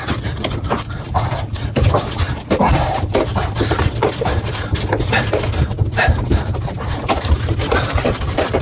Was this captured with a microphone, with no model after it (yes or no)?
no